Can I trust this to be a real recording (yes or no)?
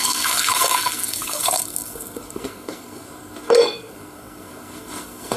no